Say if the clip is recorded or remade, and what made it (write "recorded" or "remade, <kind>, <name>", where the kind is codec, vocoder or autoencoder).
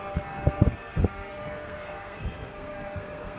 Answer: remade, codec, SNAC